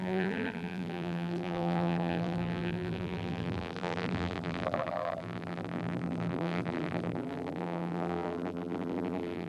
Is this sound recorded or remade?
remade